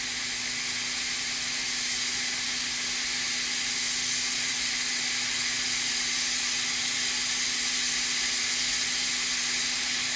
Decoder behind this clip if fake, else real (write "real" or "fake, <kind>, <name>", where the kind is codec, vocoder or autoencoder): real